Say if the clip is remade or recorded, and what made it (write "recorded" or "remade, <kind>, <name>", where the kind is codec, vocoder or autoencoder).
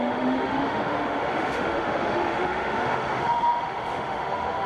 remade, autoencoder, DAC-VAE